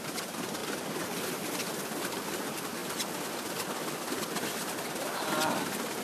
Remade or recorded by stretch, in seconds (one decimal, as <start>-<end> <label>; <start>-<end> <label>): 0.0-6.0 recorded